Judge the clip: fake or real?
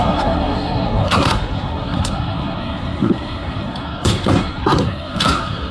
fake